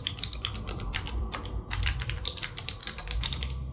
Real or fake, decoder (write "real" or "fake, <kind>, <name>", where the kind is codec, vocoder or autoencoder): fake, vocoder, BigVGAN v2